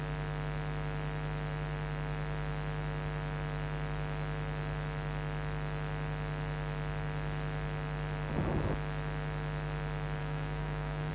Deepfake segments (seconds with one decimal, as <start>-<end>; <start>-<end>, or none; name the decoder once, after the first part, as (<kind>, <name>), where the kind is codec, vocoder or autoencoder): 10.2-11.1 (codec, DAC)

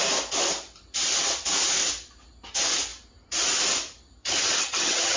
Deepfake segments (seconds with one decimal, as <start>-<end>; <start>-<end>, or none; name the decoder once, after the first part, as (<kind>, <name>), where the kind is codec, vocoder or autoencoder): 4.2-5.2 (vocoder, HiFi-GAN)

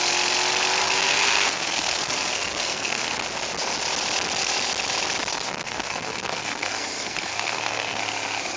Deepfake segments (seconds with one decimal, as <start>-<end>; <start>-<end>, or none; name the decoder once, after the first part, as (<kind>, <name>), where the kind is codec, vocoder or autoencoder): 0.8-3.1 (codec, SNAC); 5.3-8.0

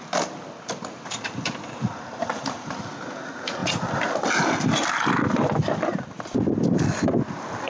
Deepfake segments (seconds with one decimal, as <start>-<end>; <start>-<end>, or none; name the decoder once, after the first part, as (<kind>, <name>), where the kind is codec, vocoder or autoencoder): none

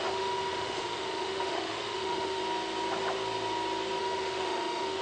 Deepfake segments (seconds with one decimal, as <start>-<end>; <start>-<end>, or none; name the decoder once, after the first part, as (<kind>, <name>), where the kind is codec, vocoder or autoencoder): 0.0-2.4 (autoencoder, DAC-VAE); 4.0-5.0

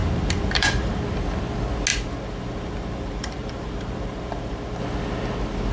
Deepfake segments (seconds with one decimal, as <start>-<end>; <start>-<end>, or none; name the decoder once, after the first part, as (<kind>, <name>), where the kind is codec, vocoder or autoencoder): 0.0-1.0 (vocoder, BigVGAN v2); 1.9-4.8

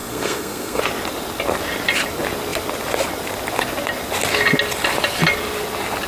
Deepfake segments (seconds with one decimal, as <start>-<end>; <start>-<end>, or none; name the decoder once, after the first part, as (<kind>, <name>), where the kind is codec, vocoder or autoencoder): 0.0-0.8 (codec, SNAC)

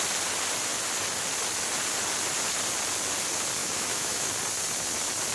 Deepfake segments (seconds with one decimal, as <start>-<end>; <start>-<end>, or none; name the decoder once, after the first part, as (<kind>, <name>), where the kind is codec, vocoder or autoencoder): 3.6-4.3 (autoencoder, DAC-VAE)